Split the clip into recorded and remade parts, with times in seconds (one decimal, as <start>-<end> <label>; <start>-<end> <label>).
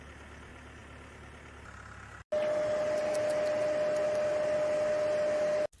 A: 0.0-5.8 recorded